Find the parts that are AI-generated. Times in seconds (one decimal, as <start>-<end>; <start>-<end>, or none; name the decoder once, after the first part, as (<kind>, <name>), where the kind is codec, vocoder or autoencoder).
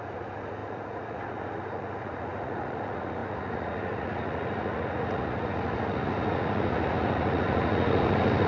0.0-8.5 (vocoder, Vocos)